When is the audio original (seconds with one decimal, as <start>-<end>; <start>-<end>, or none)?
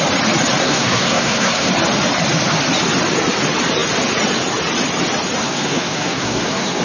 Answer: 0.0-0.6; 1.7-5.4